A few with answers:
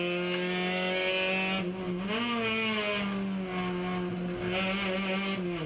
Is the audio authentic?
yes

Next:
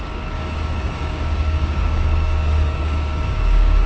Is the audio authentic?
no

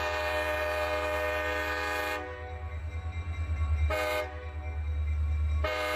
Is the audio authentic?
yes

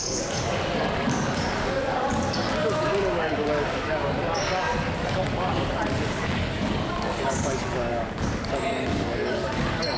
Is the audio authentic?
no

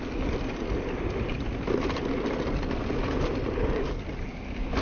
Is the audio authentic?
yes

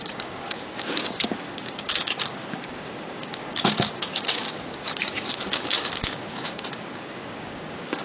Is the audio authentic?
no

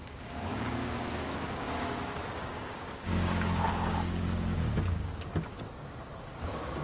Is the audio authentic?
no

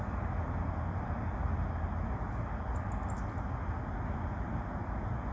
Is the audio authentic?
yes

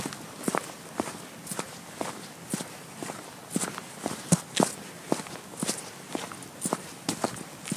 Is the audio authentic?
yes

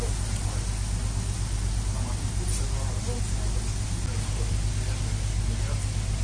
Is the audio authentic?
yes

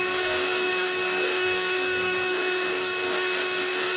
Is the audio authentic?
no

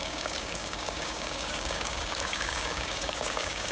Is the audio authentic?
no